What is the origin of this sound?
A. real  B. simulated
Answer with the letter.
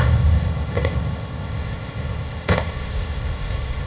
B